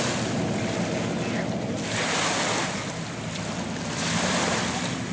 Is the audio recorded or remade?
recorded